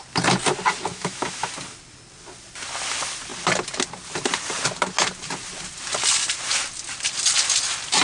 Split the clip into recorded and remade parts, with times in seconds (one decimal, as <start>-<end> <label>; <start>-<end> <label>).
0.0-0.9 recorded; 0.9-1.5 remade; 1.5-8.0 recorded